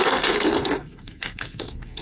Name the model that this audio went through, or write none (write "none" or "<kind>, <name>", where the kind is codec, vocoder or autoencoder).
codec, SNAC